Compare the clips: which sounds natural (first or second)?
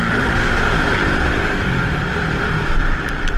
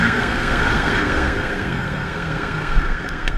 first